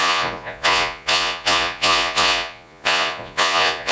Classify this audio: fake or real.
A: fake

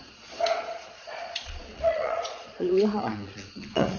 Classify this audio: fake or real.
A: fake